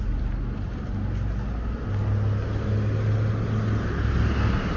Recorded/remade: recorded